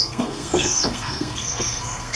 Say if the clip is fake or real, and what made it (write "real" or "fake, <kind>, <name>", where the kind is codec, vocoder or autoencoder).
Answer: fake, codec, SNAC